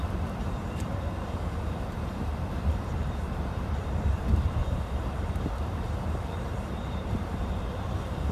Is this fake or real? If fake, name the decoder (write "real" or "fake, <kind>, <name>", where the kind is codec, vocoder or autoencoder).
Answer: fake, vocoder, BigVGAN v2